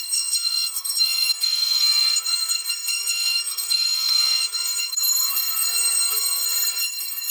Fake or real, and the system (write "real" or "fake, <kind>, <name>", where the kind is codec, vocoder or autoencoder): fake, codec, SNAC